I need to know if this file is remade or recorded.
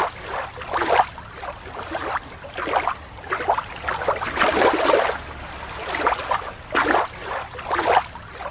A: recorded